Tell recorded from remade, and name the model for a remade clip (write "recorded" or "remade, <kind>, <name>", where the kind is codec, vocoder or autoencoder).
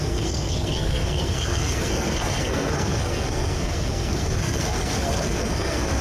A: remade, codec, SNAC